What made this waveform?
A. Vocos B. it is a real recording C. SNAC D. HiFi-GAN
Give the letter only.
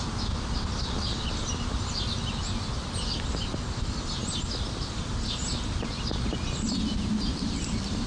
B